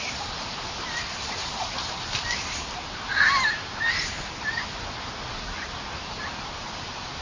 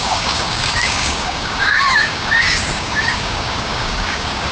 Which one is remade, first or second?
second